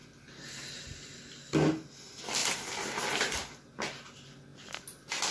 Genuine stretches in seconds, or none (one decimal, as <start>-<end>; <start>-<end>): 0.0-5.3